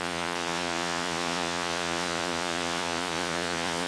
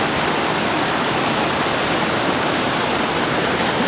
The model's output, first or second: first